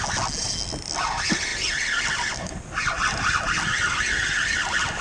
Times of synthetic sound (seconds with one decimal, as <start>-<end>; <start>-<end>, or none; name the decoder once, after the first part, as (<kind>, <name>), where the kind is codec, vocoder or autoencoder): none